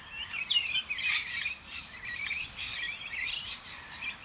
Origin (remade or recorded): remade